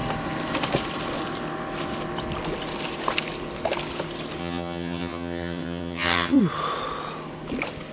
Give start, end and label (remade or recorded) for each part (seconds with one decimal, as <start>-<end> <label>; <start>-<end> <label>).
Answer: 0.0-4.4 recorded; 4.4-6.4 remade; 6.4-7.9 recorded

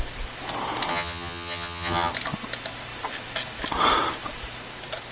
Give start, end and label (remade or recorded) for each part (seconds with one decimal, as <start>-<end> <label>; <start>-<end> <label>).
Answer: 0.0-0.9 recorded; 0.9-2.1 remade; 2.1-5.1 recorded

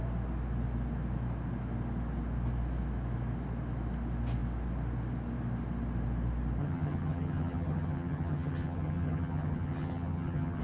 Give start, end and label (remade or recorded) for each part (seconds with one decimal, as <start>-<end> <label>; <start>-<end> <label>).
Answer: 0.0-6.6 recorded; 6.6-10.6 remade

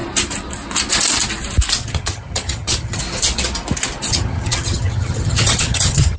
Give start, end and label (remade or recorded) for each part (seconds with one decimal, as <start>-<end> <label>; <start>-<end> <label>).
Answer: 0.0-1.8 recorded; 1.8-3.0 remade; 3.0-4.1 recorded; 4.1-6.2 remade

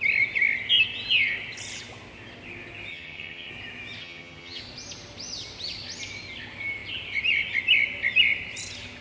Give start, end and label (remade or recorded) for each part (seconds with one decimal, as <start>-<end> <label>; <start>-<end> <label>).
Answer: 0.0-2.9 recorded; 2.9-3.5 remade; 3.5-4.0 recorded; 4.0-4.6 remade; 4.6-9.0 recorded

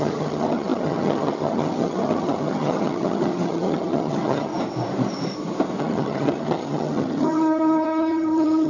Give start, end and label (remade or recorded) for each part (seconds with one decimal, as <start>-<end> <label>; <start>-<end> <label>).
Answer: 0.0-4.5 remade; 4.5-5.8 recorded; 5.8-8.7 remade

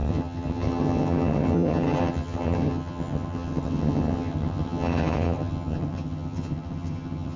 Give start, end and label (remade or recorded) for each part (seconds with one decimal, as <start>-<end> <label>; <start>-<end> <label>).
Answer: 0.0-7.4 remade